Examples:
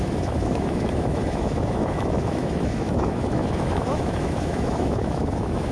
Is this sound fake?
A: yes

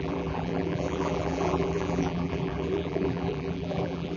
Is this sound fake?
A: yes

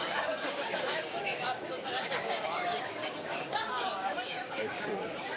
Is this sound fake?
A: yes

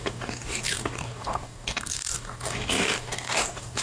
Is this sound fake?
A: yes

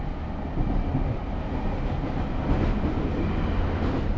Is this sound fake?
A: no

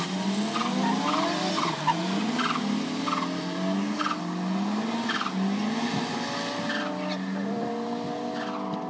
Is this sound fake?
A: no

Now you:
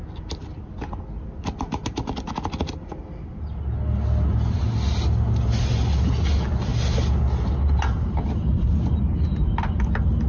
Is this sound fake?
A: no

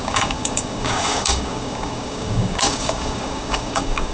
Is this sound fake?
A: yes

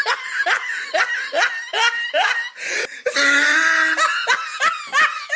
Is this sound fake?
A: no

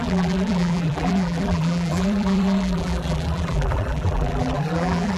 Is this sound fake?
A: yes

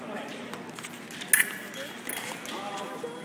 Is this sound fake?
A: no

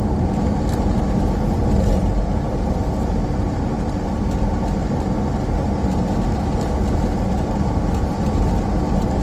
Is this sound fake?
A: no